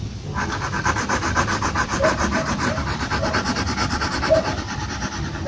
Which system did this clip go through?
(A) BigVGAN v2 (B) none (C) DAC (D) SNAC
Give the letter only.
B